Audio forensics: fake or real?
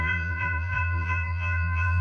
fake